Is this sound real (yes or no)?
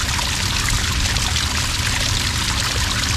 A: yes